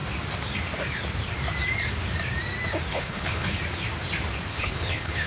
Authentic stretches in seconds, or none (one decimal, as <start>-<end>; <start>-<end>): 0.0-2.9; 3.6-4.5